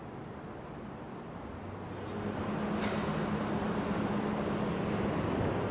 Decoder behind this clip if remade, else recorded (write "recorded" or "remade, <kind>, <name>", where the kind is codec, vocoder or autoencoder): recorded